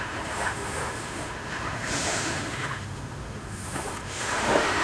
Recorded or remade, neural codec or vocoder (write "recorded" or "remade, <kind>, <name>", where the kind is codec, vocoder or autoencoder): remade, autoencoder, DAC-VAE